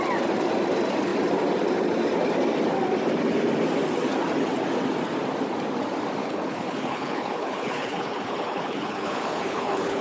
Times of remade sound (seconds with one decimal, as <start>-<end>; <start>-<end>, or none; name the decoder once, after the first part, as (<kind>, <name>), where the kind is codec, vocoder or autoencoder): 6.2-10.0 (codec, HILCodec)